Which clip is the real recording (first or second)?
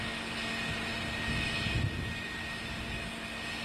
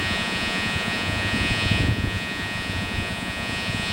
first